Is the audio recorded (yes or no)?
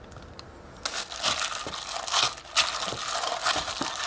yes